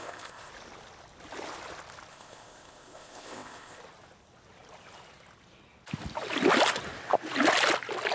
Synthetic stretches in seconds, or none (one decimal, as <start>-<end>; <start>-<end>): 0.0-0.5; 2.1-3.8